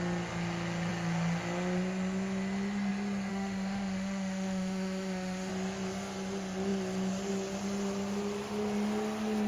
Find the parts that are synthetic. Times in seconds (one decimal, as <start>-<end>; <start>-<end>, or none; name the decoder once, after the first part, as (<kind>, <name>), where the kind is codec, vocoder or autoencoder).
3.3-5.5 (autoencoder, DAC-VAE)